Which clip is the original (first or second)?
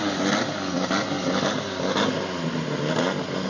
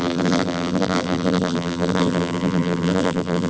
first